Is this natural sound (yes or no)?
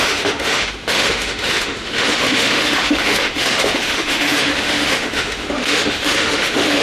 no